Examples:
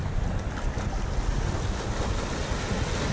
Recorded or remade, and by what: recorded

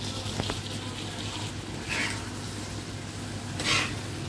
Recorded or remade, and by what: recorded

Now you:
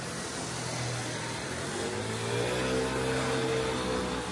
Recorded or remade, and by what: recorded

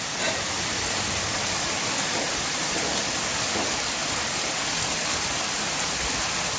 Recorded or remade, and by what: recorded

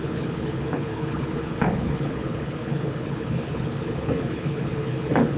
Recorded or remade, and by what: remade, codec, HILCodec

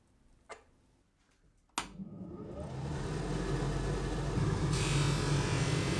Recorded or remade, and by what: recorded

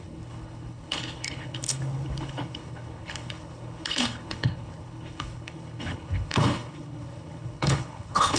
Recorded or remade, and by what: remade, codec, HILCodec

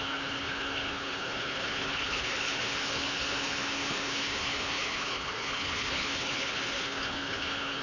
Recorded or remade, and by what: remade, codec, HILCodec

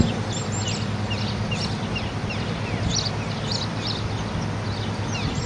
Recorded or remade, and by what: recorded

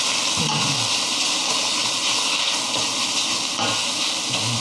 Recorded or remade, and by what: recorded